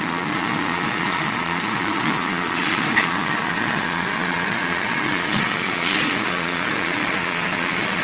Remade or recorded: remade